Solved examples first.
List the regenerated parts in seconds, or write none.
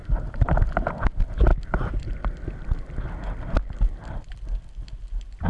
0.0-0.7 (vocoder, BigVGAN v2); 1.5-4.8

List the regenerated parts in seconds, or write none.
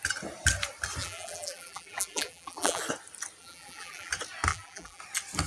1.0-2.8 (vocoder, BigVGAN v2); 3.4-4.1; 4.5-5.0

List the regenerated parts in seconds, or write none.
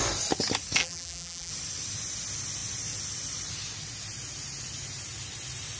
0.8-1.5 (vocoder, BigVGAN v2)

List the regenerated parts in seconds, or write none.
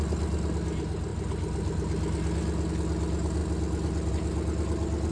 none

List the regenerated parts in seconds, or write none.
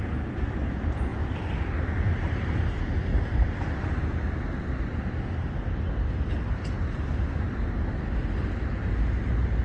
0.0-4.2 (vocoder, BigVGAN v2); 9.2-9.6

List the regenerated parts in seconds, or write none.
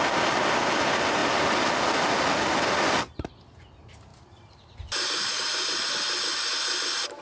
4.1-5.9 (vocoder, BigVGAN v2)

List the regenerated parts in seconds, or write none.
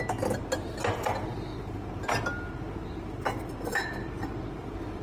none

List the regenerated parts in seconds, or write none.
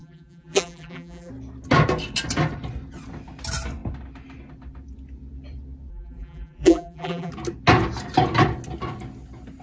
0.0-1.3 (vocoder, BigVGAN v2); 5.9-7.3